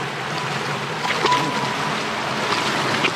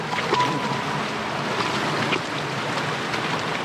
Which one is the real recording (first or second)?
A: first